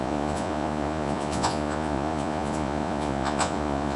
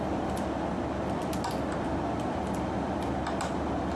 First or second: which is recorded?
second